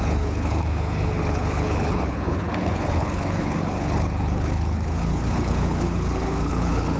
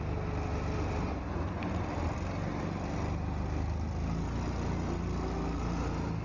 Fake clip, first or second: first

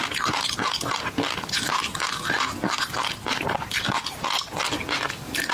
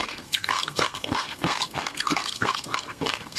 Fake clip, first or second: second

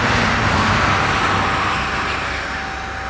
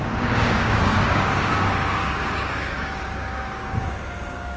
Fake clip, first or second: second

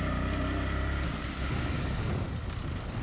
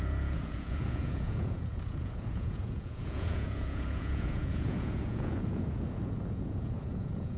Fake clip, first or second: second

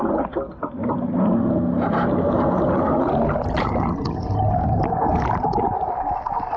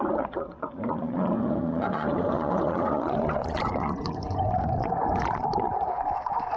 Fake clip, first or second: second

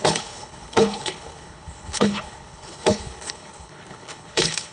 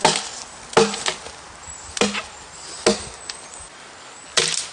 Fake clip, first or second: first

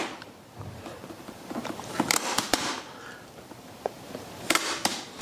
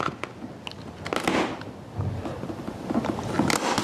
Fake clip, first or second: first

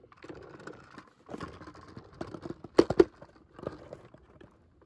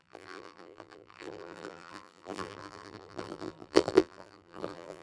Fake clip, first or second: second